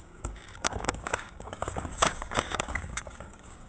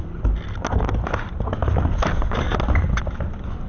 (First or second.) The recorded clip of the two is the second